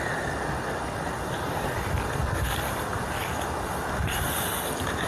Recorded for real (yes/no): yes